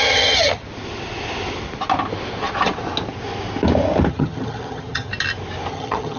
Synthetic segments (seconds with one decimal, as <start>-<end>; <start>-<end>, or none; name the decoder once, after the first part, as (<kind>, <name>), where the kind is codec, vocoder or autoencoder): 0.0-0.6 (vocoder, HiFi-GAN); 4.1-5.1; 5.7-6.2